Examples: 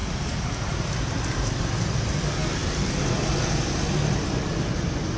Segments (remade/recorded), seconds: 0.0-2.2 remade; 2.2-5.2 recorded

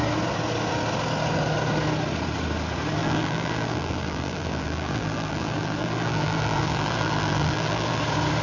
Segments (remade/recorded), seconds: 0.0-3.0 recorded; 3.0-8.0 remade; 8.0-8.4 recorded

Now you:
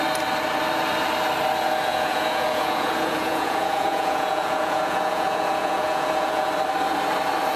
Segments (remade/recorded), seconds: 0.0-1.9 recorded; 1.9-6.5 remade; 6.5-7.6 recorded